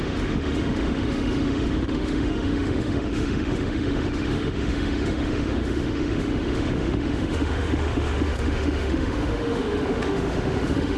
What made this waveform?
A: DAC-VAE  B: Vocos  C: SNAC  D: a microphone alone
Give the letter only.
A